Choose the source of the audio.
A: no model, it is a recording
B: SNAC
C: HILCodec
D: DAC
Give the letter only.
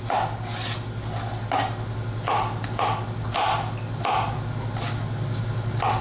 A